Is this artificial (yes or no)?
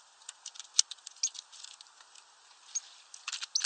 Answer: no